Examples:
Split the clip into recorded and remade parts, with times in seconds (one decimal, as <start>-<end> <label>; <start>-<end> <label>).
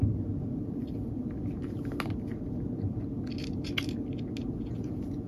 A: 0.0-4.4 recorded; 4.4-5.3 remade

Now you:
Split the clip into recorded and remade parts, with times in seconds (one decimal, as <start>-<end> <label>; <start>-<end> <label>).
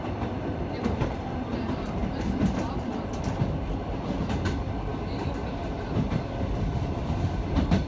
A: 0.0-7.9 recorded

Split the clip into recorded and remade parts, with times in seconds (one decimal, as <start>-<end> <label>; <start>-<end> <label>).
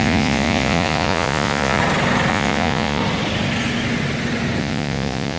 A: 0.0-1.8 remade; 1.8-2.3 recorded; 2.3-3.0 remade; 3.0-4.6 recorded; 4.6-5.4 remade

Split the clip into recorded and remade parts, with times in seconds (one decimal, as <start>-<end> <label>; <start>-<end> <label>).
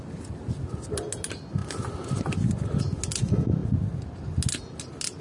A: 0.0-5.2 recorded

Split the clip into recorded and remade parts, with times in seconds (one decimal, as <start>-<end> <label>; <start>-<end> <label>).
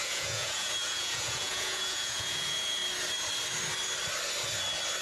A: 0.0-2.8 remade; 2.8-5.0 recorded